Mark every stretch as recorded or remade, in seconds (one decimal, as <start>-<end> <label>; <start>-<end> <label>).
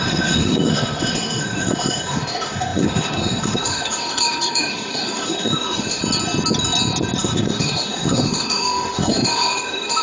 0.0-6.0 remade; 6.0-7.2 recorded; 7.2-10.0 remade